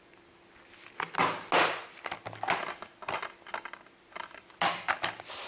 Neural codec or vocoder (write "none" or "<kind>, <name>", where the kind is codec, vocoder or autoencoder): none